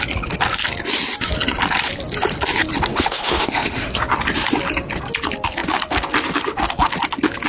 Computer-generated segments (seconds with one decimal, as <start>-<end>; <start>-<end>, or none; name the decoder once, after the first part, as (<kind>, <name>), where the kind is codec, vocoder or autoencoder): 2.9-4.0 (autoencoder, DAC-VAE)